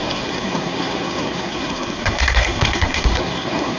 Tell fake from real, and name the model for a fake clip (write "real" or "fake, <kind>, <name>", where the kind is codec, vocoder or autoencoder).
fake, codec, SNAC